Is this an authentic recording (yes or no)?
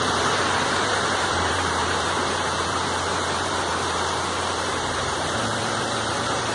no